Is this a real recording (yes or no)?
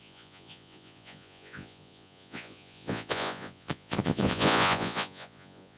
no